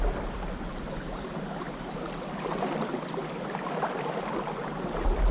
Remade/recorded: recorded